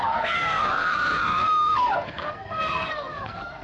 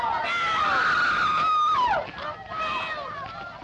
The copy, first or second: first